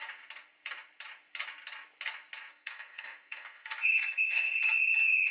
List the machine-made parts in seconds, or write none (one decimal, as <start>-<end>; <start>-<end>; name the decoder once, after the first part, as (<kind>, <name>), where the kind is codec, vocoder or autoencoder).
2.5-4.6 (codec, SNAC)